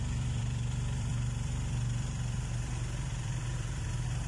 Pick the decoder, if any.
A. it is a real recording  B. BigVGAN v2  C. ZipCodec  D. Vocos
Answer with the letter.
B